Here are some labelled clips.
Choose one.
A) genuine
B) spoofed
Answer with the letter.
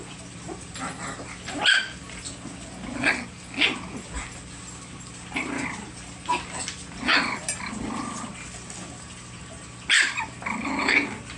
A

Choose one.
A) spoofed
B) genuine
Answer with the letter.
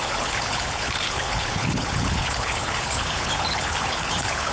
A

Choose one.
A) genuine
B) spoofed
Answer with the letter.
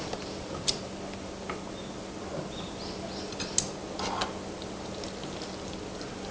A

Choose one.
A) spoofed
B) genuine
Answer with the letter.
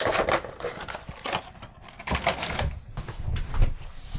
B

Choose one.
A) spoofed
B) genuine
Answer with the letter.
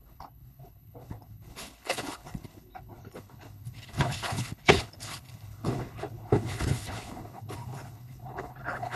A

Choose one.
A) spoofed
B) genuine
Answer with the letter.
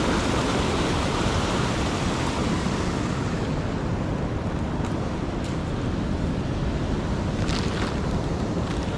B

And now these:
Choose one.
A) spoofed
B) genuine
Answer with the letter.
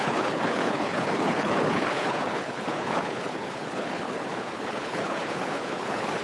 A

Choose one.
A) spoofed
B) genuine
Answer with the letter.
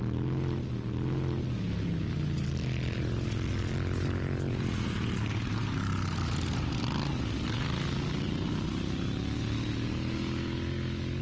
B